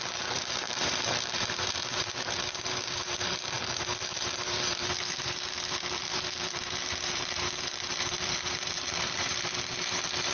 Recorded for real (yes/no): no